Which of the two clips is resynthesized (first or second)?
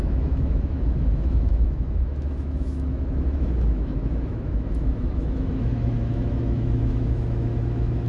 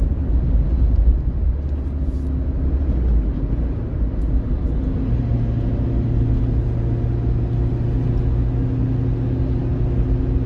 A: first